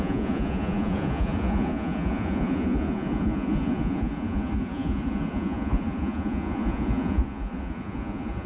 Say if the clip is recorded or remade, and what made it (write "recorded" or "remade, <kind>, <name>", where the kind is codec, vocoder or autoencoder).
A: remade, vocoder, Vocos